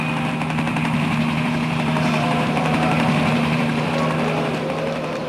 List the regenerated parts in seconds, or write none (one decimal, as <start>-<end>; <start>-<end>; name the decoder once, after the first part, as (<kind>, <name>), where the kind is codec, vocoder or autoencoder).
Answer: 0.7-3.9 (vocoder, BigVGAN v2)